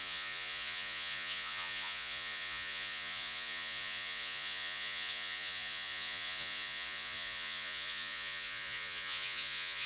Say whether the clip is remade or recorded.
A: remade